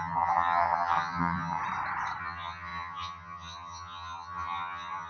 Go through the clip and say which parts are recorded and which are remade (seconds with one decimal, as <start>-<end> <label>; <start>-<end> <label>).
0.0-1.6 remade; 1.6-2.2 recorded; 2.2-5.1 remade